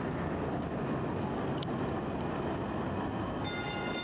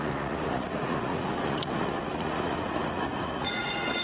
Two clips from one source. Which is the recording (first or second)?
first